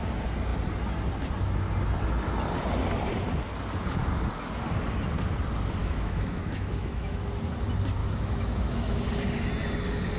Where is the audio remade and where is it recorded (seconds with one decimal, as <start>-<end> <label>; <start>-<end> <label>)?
0.0-5.8 recorded; 5.8-7.3 remade; 7.3-8.0 recorded; 8.0-9.0 remade; 9.0-10.2 recorded